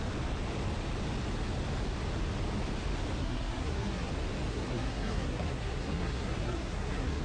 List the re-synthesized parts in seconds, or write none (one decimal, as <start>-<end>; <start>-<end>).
3.2-4.1; 4.5-7.2

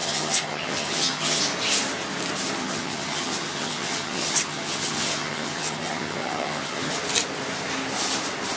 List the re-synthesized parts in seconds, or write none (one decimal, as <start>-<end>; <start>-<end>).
0.0-1.4; 2.6-6.9

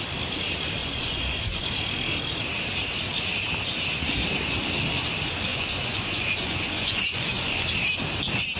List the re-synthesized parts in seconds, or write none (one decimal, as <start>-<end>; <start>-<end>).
0.8-1.6; 5.5-7.7

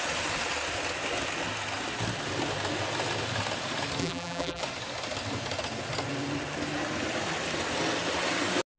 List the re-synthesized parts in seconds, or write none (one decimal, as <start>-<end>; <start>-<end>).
4.0-4.6